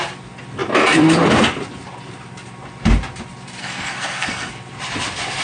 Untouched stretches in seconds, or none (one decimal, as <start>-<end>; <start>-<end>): 0.0-3.6; 4.5-5.4